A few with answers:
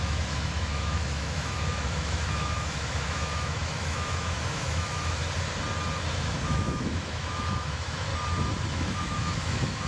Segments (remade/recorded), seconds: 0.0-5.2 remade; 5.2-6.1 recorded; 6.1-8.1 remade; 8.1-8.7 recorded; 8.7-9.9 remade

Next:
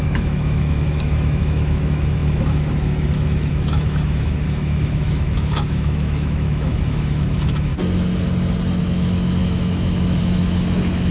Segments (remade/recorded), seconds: 0.0-7.7 remade; 7.7-8.7 recorded; 8.7-11.1 remade

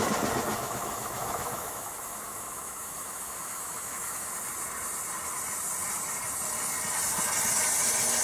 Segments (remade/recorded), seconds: 0.0-0.5 recorded; 0.5-4.3 remade; 4.3-8.2 recorded